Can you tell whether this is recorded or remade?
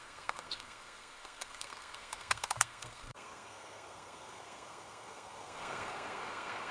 remade